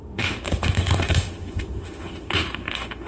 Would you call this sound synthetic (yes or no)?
yes